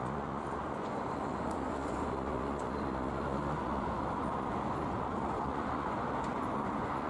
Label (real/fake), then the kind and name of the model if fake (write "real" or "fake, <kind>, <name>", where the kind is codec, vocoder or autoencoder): fake, vocoder, Vocos